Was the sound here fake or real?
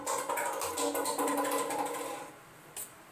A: real